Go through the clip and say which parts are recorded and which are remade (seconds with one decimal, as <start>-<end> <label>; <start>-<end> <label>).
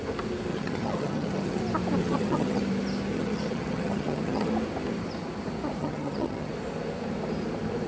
0.0-0.5 recorded; 0.5-1.6 remade; 1.6-2.0 recorded; 2.0-2.6 remade; 2.6-3.1 recorded; 3.1-4.5 remade; 4.5-5.8 recorded; 5.8-6.5 remade; 6.5-7.9 recorded